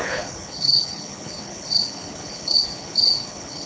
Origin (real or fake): fake